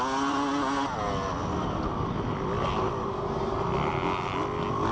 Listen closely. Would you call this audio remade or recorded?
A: recorded